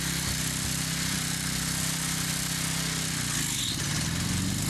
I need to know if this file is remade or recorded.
recorded